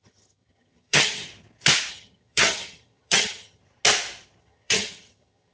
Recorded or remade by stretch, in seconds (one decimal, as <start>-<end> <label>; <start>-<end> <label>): 0.0-1.3 remade; 1.3-1.9 recorded; 1.9-3.6 remade; 3.6-4.4 recorded; 4.4-5.5 remade